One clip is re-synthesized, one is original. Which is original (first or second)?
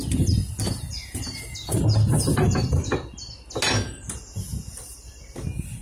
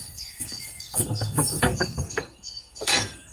first